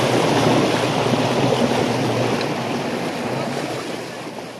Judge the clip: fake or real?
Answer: real